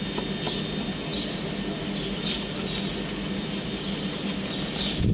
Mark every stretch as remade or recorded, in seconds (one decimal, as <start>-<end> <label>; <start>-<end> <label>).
0.0-5.1 recorded